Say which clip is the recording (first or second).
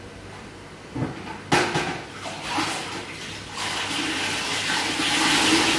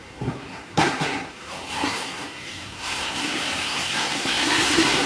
first